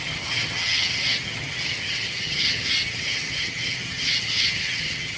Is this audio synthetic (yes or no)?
yes